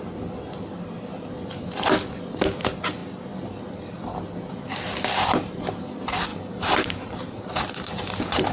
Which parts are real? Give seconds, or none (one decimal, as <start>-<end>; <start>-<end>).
0.0-6.3